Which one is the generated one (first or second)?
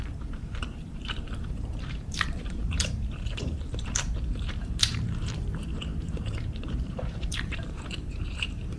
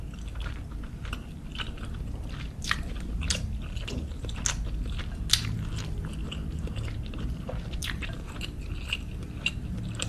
first